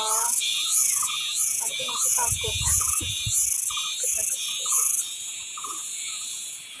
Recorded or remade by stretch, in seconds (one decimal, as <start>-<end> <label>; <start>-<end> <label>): 0.0-3.4 remade; 3.4-4.5 recorded; 4.5-6.8 remade